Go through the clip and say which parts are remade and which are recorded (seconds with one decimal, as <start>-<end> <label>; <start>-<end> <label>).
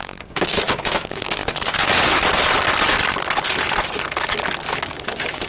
0.0-1.4 remade; 1.4-4.7 recorded; 4.7-5.5 remade